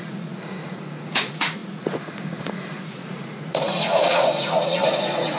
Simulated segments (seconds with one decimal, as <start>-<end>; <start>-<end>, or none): 0.0-5.4